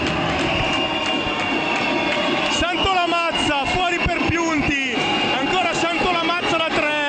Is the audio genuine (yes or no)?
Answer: yes